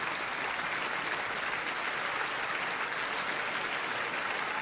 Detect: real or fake real